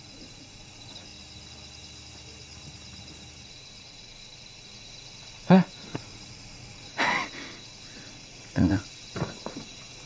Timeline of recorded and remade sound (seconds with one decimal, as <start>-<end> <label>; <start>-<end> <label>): 0.0-1.1 remade; 1.1-3.5 recorded; 3.5-10.1 remade